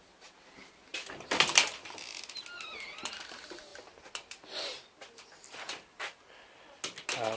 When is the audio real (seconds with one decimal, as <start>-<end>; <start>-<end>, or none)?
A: 0.0-7.4